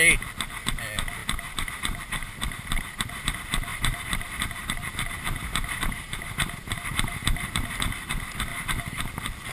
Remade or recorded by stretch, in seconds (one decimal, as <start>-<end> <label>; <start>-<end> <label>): 0.0-1.2 recorded; 1.2-3.3 remade; 3.3-3.7 recorded; 3.7-7.7 remade; 7.7-8.5 recorded; 8.5-9.1 remade; 9.1-9.5 recorded